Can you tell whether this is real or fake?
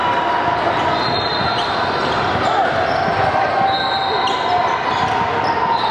real